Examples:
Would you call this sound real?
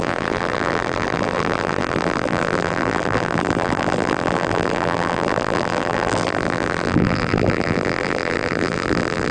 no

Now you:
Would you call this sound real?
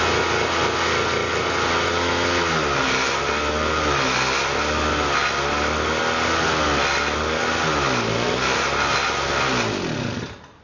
yes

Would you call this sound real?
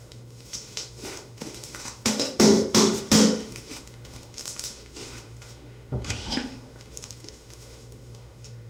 no